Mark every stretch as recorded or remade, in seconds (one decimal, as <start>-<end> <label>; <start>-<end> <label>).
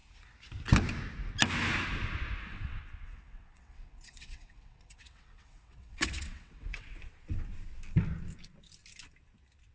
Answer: 0.0-2.5 recorded; 2.5-7.0 remade; 7.0-9.7 recorded